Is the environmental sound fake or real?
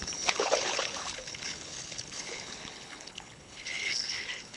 fake